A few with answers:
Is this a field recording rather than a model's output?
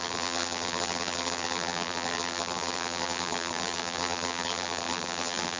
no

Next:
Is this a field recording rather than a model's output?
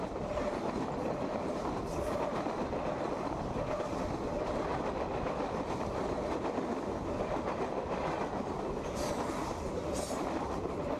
yes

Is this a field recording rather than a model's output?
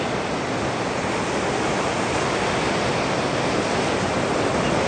yes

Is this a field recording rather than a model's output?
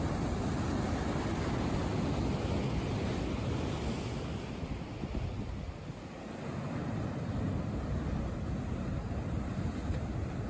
yes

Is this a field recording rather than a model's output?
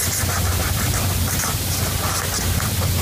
yes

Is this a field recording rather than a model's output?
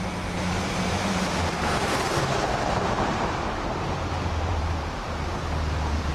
no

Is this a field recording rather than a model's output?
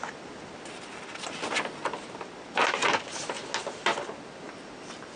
yes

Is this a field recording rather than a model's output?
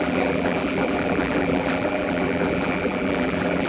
no